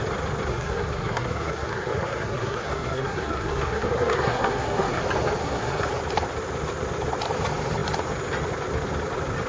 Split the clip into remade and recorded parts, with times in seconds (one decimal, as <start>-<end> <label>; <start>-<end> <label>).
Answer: 0.0-0.5 recorded; 0.5-5.0 remade; 5.0-5.4 recorded; 5.4-5.9 remade; 5.9-9.5 recorded